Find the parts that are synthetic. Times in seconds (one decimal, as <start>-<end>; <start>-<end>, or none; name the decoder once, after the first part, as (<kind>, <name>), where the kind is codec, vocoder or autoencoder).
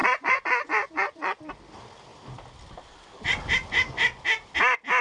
0.0-1.5 (vocoder, Vocos)